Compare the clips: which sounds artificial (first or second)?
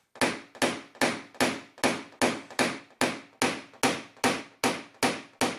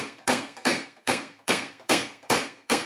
second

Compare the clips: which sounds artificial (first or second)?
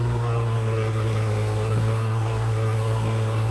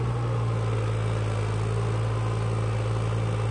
first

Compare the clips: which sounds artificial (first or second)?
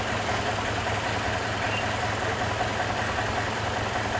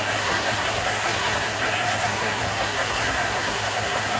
second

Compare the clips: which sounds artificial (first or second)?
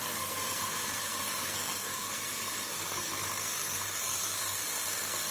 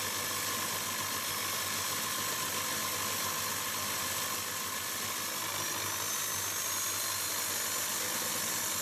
first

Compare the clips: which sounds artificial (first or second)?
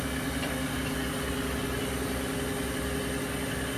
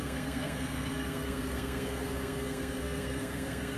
second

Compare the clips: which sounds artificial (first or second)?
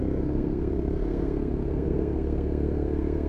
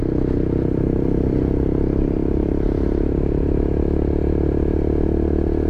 first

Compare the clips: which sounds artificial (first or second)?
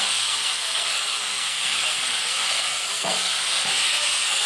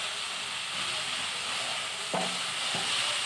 first